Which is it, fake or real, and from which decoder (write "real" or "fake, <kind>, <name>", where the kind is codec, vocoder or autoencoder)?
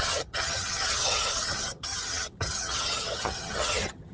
fake, vocoder, HiFi-GAN